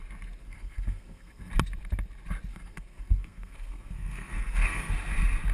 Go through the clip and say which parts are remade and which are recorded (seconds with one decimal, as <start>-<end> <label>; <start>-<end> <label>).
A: 0.0-0.4 recorded; 0.4-1.5 remade; 1.5-2.5 recorded; 2.5-4.9 remade; 4.9-5.5 recorded

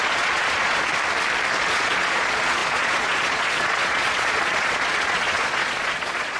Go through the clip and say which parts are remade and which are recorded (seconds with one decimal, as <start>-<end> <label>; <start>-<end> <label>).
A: 0.0-0.9 remade; 0.9-1.6 recorded; 1.6-6.4 remade

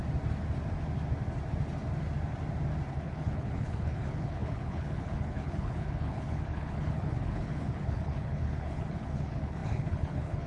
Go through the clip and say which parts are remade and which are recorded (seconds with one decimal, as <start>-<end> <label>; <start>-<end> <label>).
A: 0.0-2.9 recorded; 2.9-10.5 remade

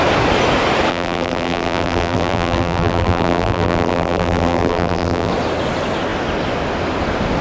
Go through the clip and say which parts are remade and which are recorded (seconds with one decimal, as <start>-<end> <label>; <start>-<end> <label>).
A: 0.0-0.9 recorded; 0.9-5.3 remade; 5.3-7.4 recorded

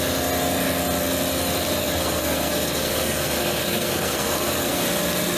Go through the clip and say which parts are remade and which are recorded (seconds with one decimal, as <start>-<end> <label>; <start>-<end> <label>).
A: 0.0-1.8 recorded; 1.8-4.8 remade; 4.8-5.4 recorded

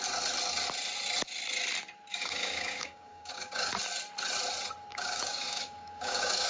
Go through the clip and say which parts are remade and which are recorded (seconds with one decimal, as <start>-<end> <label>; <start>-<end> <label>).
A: 0.0-2.1 recorded; 2.1-3.7 remade; 3.7-4.9 recorded; 4.9-6.5 remade

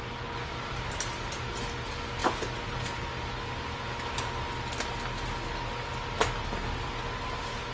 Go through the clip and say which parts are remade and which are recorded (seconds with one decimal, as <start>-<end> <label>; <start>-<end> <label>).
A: 0.0-7.7 recorded

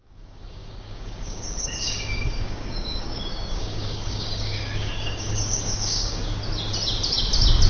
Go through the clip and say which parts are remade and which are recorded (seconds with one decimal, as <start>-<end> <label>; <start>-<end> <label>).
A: 0.0-6.4 remade; 6.4-7.7 recorded